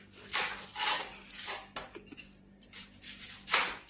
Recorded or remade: recorded